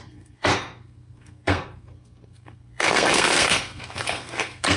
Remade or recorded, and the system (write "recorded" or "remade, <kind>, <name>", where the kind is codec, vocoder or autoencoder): remade, codec, SNAC